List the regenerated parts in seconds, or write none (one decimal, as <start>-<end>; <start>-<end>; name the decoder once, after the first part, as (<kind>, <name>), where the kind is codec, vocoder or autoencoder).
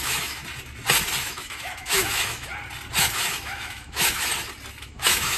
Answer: 0.0-0.4 (autoencoder, DAC-VAE); 1.2-2.5; 3.0-4.3; 4.8-5.4